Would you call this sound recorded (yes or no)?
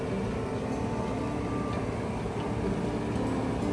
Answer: yes